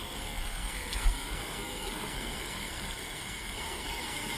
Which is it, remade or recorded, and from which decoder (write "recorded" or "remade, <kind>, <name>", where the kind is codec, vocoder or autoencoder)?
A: remade, codec, SNAC